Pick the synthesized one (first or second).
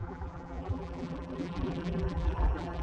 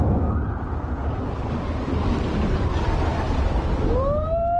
first